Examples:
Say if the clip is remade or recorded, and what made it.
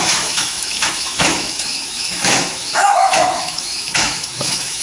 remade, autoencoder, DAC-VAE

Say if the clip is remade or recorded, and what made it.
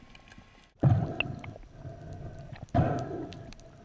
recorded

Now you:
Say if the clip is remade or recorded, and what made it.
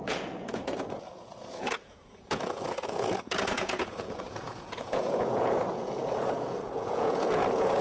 remade, vocoder, Vocos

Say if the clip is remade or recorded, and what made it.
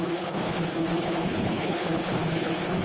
remade, codec, HILCodec